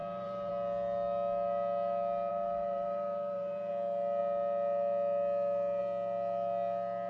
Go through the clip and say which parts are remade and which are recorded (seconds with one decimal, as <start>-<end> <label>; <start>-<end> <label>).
0.0-0.5 remade; 0.5-2.3 recorded; 2.3-3.7 remade; 3.7-7.1 recorded